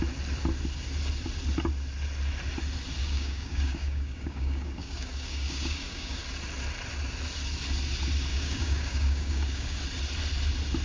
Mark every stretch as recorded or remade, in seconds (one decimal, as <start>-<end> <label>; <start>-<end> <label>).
0.0-3.0 recorded; 3.0-6.2 remade; 6.2-8.3 recorded; 8.3-9.8 remade; 9.8-10.8 recorded